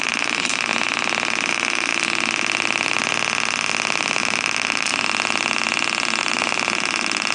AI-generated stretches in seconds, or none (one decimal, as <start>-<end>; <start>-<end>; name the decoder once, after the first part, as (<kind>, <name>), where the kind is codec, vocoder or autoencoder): 0.0-0.7 (vocoder, BigVGAN v2); 1.5-1.9; 4.2-4.9; 6.2-7.3